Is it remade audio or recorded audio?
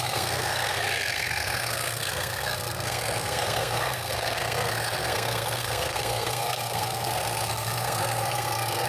remade